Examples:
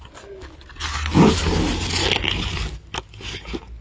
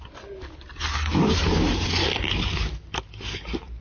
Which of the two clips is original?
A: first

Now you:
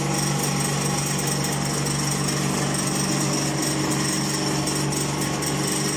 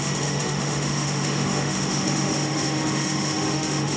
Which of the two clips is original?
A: first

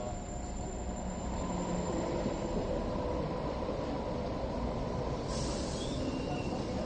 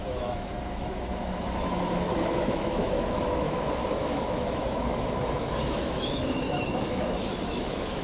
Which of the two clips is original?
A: first